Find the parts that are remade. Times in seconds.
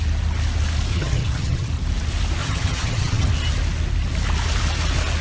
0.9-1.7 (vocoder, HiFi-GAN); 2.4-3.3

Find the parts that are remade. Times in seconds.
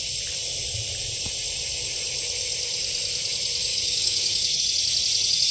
3.7-4.6 (codec, DAC)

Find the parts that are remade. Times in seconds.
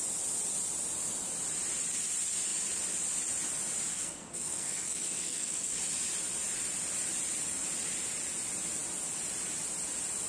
3.9-5.8 (codec, SNAC)